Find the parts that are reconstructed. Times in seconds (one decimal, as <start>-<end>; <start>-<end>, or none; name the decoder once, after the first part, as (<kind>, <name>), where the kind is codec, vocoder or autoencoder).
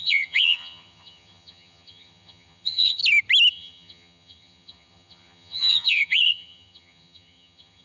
0.0-3.0 (vocoder, HiFi-GAN); 3.5-7.8